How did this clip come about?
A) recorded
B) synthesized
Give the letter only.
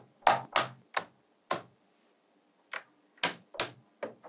A